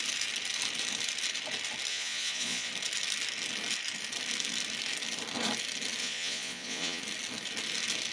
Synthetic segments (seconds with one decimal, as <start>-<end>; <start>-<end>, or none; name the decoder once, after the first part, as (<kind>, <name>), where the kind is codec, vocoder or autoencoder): 1.9-2.7 (vocoder, Vocos); 6.0-7.0

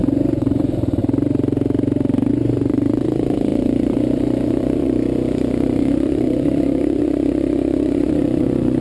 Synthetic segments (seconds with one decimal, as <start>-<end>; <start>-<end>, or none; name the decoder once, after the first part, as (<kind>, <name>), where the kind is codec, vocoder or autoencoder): 0.0-1.0 (vocoder, Vocos); 2.3-8.8

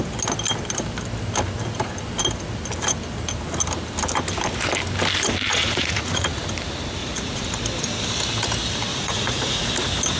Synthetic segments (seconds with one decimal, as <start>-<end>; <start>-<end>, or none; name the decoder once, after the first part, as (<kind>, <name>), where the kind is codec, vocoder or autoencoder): 5.5-6.4 (vocoder, Vocos); 7.0-7.6; 8.9-9.7

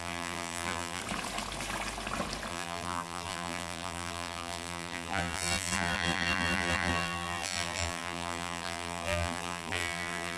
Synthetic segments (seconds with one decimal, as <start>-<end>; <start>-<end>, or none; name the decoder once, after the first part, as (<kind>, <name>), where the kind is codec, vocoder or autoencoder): 0.0-1.0 (vocoder, BigVGAN v2); 2.5-10.4

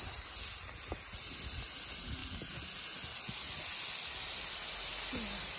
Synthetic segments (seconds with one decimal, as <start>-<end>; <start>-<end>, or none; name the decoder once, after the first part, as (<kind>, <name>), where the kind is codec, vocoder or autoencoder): none

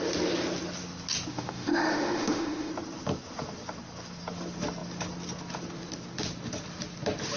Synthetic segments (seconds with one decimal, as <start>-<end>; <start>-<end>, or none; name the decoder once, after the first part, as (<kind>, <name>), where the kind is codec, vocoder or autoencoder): 1.3-2.7 (autoencoder, DAC-VAE)

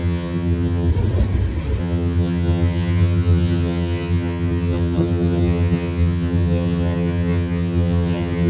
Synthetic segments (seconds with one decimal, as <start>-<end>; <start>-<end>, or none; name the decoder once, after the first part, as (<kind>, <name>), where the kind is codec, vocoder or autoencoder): 0.0-0.9 (vocoder, HiFi-GAN); 1.8-8.5